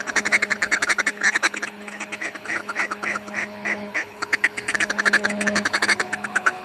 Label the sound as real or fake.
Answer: fake